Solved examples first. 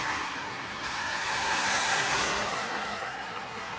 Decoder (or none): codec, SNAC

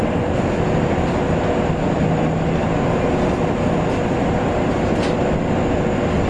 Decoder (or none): none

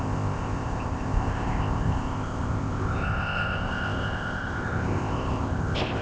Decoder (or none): codec, ZipCodec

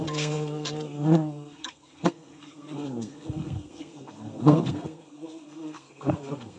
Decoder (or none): codec, SNAC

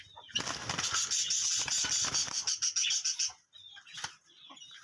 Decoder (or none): none